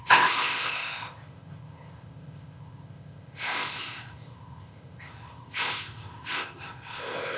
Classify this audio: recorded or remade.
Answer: remade